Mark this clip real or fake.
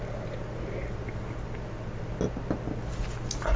real